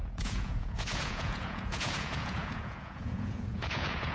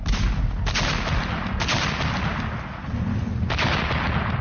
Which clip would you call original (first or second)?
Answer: second